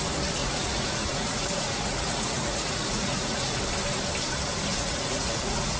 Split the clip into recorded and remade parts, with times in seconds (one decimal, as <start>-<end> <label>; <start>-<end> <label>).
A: 0.0-0.4 recorded; 0.4-3.6 remade; 3.6-4.7 recorded; 4.7-5.8 remade